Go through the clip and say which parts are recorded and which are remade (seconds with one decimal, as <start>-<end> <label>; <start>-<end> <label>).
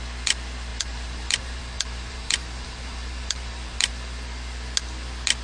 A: 0.0-0.7 recorded; 0.7-3.9 remade; 3.9-5.4 recorded